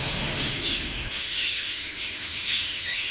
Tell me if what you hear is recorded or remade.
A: remade